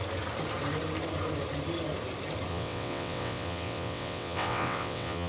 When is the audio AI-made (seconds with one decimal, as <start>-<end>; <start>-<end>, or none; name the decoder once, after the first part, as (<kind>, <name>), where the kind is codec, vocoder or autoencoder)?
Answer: 2.5-5.3 (vocoder, WaveNeXt)